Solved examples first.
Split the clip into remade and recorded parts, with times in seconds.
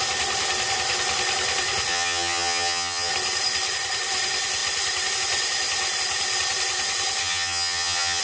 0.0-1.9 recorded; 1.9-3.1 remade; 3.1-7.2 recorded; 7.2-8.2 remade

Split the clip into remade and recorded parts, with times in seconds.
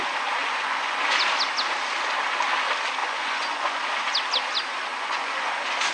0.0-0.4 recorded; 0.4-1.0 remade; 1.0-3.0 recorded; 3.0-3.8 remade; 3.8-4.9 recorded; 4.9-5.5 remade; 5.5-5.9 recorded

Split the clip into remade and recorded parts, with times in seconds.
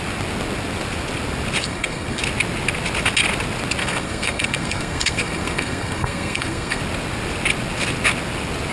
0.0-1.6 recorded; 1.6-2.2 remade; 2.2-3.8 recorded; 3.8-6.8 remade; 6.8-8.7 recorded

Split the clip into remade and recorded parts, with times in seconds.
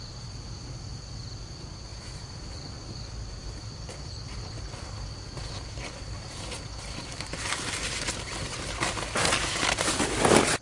0.0-10.6 recorded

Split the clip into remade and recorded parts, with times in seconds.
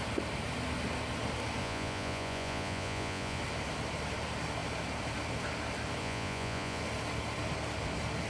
0.0-1.6 recorded; 1.6-3.4 remade; 3.4-6.0 recorded; 6.0-6.8 remade; 6.8-8.3 recorded